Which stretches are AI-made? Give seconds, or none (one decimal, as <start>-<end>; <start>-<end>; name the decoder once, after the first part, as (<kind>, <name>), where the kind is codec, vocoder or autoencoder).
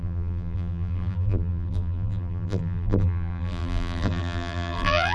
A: 0.0-5.1 (vocoder, BigVGAN v2)